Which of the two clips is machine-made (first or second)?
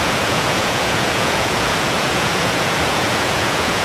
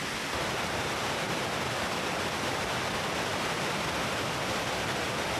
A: first